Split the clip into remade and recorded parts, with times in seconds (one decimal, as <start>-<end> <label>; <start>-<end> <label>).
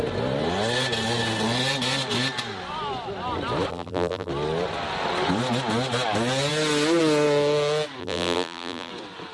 0.0-3.7 recorded; 3.7-4.3 remade; 4.3-8.0 recorded; 8.0-8.9 remade; 8.9-9.3 recorded